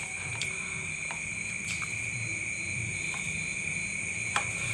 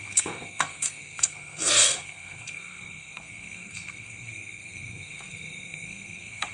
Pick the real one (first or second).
first